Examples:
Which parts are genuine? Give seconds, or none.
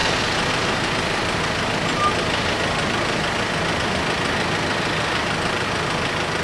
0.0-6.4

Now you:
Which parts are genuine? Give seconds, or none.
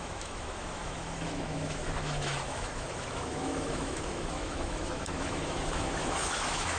none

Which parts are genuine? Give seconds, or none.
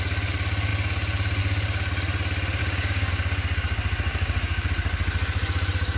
0.0-2.6; 3.1-4.1; 4.7-6.0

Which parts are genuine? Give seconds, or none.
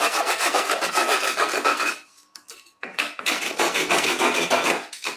none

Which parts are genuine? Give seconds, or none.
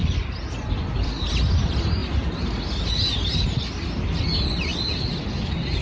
0.0-5.8